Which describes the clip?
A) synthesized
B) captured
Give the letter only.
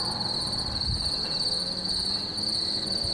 B